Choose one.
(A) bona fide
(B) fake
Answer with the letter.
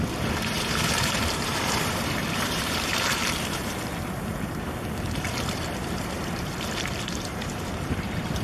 B